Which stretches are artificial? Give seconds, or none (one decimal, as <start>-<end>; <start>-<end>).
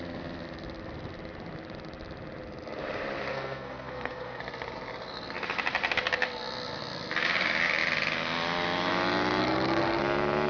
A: 3.3-4.4; 9.4-10.0